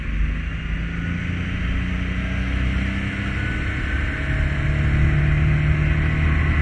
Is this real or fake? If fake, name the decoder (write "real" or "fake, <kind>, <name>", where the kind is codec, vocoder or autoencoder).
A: real